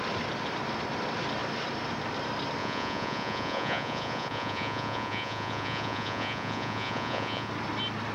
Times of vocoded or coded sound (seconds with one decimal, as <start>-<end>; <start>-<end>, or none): 2.6-7.5

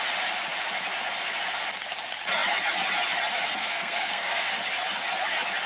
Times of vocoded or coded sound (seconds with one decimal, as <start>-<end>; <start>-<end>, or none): 3.6-4.6